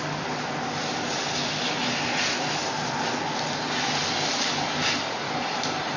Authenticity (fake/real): real